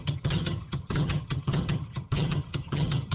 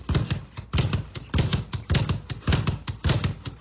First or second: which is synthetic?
first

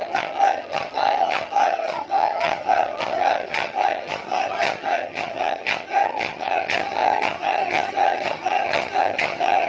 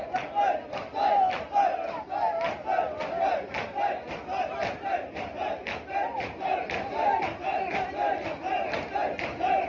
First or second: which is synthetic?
first